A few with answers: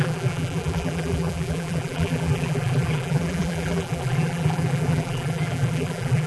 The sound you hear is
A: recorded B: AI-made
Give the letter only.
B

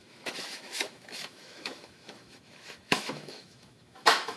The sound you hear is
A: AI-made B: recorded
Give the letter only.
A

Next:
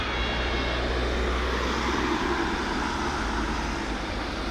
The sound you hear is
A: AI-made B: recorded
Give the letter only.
B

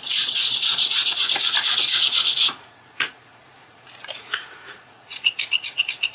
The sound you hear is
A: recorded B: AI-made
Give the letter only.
B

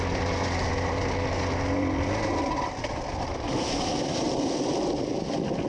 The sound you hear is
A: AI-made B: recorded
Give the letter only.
B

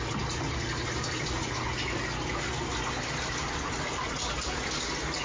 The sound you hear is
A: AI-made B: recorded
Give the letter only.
B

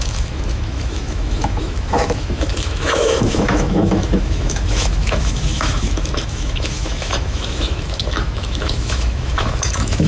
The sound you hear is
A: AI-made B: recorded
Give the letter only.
A